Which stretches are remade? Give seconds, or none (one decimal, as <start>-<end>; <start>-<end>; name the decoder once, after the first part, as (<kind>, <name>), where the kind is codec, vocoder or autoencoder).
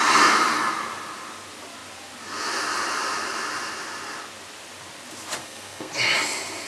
5.4-5.9 (codec, SNAC)